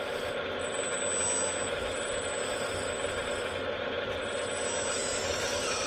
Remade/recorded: recorded